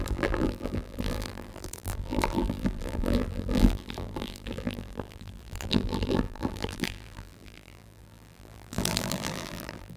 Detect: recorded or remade remade